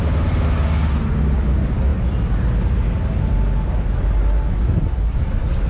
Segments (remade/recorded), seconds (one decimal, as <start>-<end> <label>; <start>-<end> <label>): 0.0-5.7 recorded